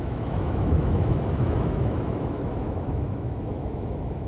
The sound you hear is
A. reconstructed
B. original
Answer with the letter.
A